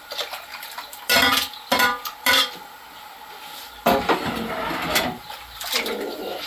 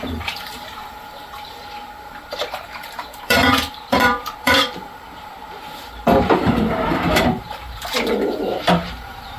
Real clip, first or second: first